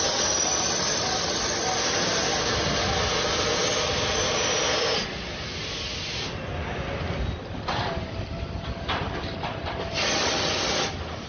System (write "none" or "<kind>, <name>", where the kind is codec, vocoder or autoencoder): none